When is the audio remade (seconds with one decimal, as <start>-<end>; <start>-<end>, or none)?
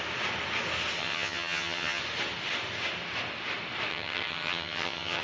1.0-2.0; 3.9-5.2